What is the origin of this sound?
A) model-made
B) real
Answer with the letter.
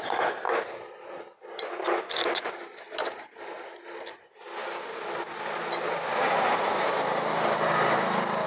B